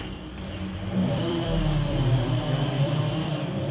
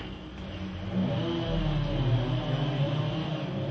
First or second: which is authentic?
second